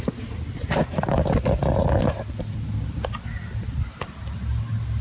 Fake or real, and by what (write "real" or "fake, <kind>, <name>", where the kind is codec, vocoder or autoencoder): real